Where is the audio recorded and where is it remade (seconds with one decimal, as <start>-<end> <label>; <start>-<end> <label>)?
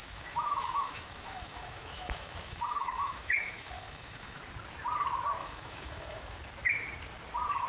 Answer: 0.0-4.4 remade; 4.4-5.4 recorded; 5.4-6.4 remade; 6.4-7.7 recorded